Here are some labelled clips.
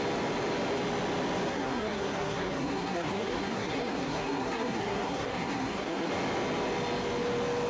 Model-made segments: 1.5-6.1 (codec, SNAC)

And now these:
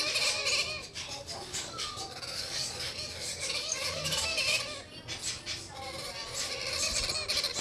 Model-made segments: 0.8-4.6 (codec, DAC)

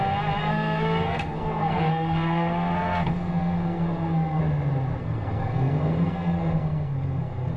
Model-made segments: 0.4-4.4 (codec, SNAC); 5.0-7.6

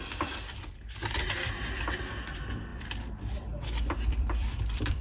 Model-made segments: 2.7-5.0 (vocoder, BigVGAN v2)

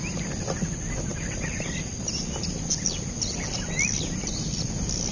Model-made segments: none